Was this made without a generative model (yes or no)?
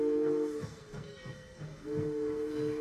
no